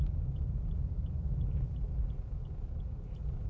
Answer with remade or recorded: recorded